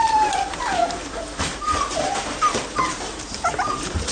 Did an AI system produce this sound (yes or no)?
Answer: no